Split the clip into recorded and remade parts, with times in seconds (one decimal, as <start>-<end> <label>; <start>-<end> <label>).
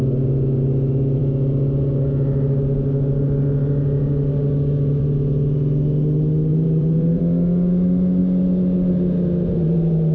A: 0.0-6.5 recorded; 6.5-7.2 remade; 7.2-10.1 recorded